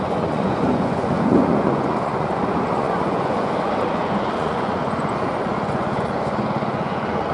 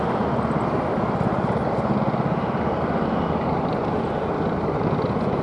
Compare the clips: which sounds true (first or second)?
second